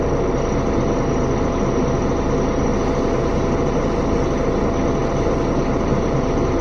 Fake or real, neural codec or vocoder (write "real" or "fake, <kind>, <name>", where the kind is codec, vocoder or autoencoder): real